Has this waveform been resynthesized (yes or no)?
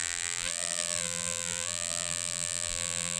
yes